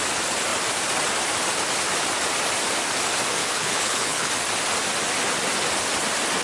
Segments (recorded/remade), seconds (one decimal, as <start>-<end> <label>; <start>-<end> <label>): 0.0-3.4 recorded; 3.4-4.3 remade; 4.3-6.4 recorded